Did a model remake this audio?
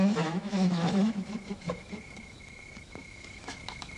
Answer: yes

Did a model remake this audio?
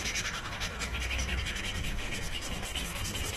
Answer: yes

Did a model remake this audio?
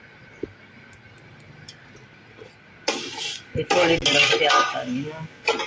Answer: no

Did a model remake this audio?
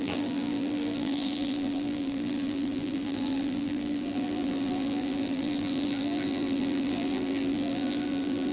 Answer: yes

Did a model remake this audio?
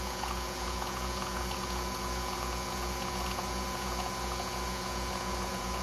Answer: yes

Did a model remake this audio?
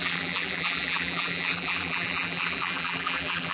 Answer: yes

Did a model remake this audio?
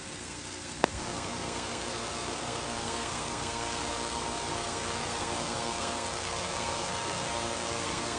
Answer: yes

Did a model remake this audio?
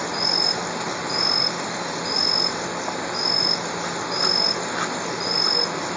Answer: no